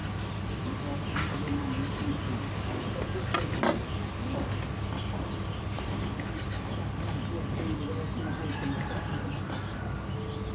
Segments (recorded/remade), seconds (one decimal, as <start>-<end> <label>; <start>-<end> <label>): 0.0-10.5 recorded